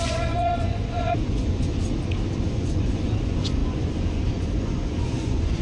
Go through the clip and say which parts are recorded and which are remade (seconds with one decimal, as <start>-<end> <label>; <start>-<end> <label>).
0.0-1.7 remade; 1.7-2.5 recorded; 2.5-5.6 remade